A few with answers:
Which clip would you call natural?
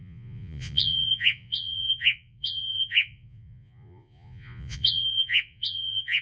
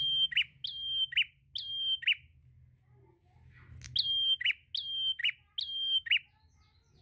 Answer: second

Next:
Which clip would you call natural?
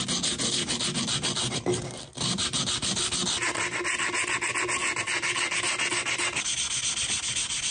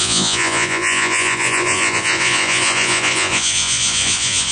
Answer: first